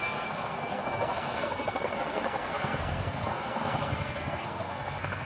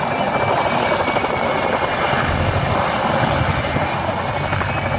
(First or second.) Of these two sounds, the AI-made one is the first